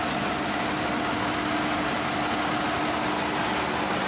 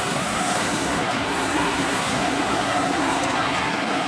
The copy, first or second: second